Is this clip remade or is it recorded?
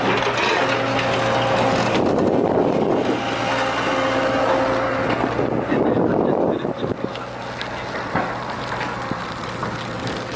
recorded